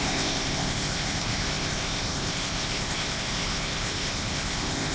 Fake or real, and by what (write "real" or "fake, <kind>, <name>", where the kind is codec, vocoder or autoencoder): fake, codec, ZipCodec